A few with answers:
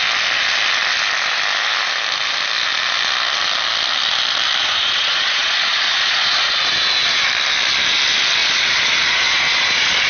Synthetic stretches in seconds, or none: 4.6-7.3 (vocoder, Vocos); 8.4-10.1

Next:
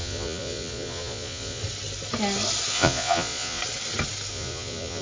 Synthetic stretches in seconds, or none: 0.0-1.6 (vocoder, Vocos); 2.7-3.6; 4.3-5.0

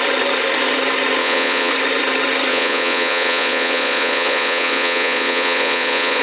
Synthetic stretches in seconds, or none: 1.2-1.7 (vocoder, Vocos); 2.5-6.2

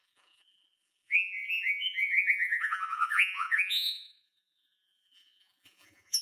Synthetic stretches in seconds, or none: 0.0-6.2 (vocoder, Vocos)

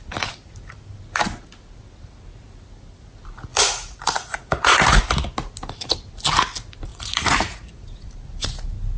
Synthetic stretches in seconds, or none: 3.5-5.0 (vocoder, Vocos); 6.9-8.1

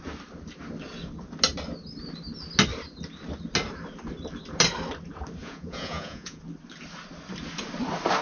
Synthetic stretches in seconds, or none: 5.4-6.4 (vocoder, Vocos)

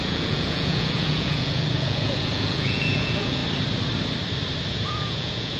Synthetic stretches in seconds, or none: 0.0-3.4 (vocoder, Vocos); 4.7-5.6

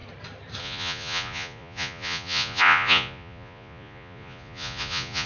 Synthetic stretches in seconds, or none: 0.6-5.3 (vocoder, Vocos)